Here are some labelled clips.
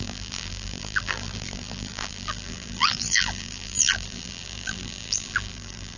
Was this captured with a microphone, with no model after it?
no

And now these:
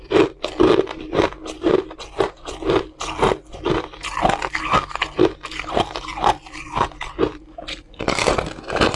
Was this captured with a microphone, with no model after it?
yes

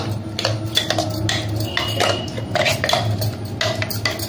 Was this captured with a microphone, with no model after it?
yes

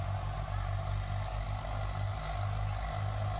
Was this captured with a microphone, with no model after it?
yes